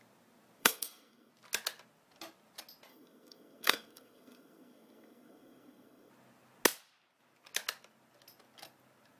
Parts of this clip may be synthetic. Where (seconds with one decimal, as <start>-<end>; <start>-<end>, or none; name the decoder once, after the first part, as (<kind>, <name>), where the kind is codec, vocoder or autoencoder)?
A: 0.6-1.3 (codec, SNAC); 2.9-6.1